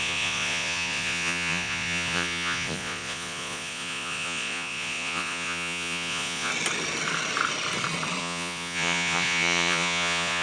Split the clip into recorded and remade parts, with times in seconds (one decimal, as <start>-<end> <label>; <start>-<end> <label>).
0.0-6.5 remade; 6.5-8.2 recorded; 8.2-10.4 remade